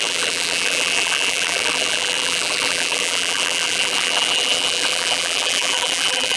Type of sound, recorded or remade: remade